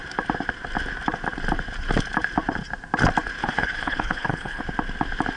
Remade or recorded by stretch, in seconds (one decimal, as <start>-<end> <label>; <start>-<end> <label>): 0.0-3.4 recorded; 3.4-4.6 remade; 4.6-5.4 recorded